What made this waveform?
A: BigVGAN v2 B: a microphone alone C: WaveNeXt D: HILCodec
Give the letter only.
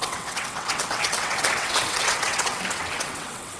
C